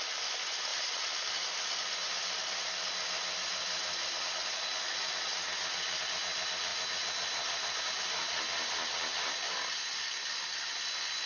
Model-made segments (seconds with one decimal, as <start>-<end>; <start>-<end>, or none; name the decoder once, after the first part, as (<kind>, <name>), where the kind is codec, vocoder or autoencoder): none